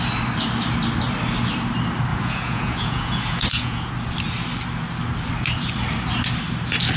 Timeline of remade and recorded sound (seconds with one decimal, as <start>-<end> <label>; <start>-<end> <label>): 0.0-2.1 recorded; 2.1-3.9 remade; 3.9-7.0 recorded